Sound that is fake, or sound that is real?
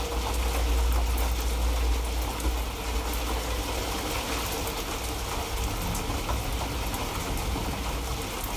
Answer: real